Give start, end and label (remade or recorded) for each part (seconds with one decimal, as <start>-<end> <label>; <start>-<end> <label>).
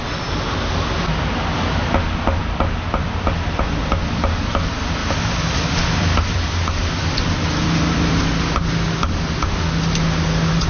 0.0-2.4 recorded; 2.4-4.5 remade; 4.5-5.0 recorded; 5.0-8.2 remade; 8.2-10.7 recorded